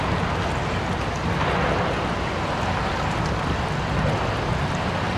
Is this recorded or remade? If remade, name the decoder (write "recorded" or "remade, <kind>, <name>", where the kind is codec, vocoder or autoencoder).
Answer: recorded